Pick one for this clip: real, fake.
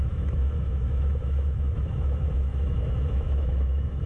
fake